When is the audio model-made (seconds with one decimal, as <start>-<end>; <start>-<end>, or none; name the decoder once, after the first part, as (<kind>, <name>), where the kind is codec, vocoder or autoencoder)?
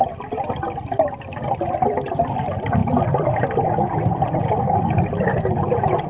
none